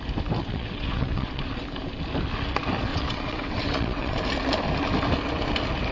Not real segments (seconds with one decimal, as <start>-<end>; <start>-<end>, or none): 0.4-1.6; 2.9-4.2